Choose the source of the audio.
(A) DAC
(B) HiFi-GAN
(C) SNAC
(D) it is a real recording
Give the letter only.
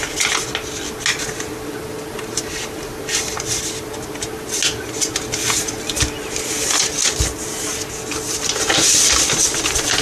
D